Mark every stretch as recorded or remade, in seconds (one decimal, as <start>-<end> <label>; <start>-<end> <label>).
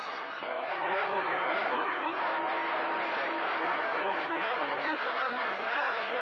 0.0-2.2 remade; 2.2-3.6 recorded; 3.6-6.2 remade